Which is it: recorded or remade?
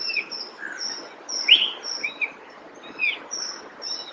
recorded